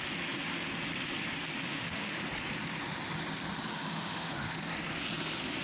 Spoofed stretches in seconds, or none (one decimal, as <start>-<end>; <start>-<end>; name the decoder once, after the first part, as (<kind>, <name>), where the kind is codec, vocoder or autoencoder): 1.6-2.2 (autoencoder, DAC-VAE); 3.7-4.7